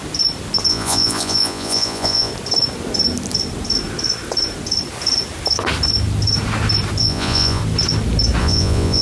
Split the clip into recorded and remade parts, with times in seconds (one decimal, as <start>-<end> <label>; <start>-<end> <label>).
0.0-0.7 recorded; 0.7-2.3 remade; 2.3-7.0 recorded; 7.0-7.6 remade; 7.6-8.4 recorded; 8.4-9.0 remade